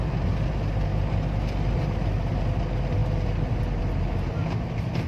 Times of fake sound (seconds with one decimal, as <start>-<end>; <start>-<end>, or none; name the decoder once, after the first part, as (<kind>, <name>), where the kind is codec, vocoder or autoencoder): none